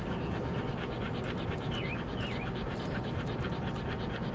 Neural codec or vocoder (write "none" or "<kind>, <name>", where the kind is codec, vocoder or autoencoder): none